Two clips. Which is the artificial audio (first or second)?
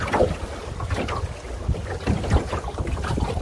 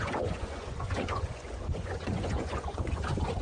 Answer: second